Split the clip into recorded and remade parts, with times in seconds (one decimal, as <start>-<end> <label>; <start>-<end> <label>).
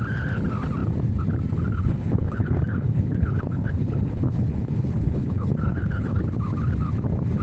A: 0.0-1.8 recorded; 1.8-6.2 remade; 6.2-7.4 recorded